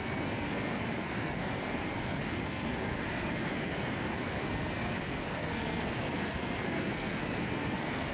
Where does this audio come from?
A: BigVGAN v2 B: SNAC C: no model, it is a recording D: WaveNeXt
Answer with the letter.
B